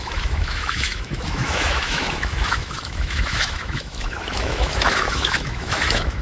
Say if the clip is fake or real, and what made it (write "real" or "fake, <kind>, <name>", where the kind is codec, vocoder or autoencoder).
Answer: fake, autoencoder, DAC-VAE